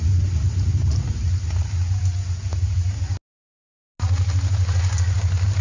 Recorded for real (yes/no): yes